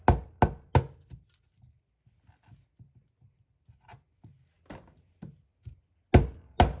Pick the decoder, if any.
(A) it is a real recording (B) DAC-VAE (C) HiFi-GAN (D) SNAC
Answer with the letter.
A